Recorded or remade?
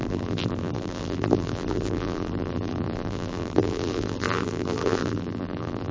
remade